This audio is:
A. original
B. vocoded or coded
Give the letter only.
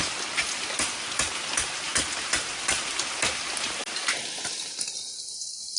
A